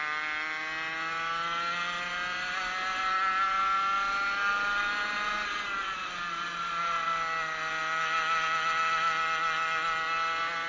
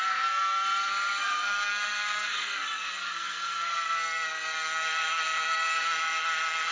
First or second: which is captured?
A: first